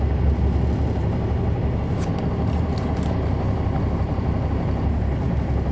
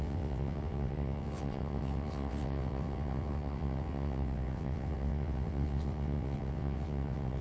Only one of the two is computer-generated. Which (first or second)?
second